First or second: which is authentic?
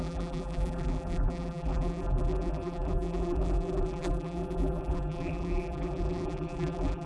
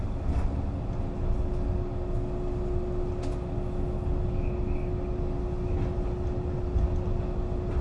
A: second